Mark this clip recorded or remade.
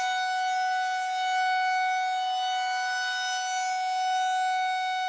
recorded